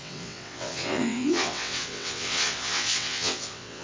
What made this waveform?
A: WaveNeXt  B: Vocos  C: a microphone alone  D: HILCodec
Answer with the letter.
A